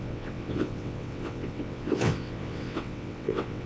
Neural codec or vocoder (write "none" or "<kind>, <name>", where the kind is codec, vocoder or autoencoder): vocoder, WaveNeXt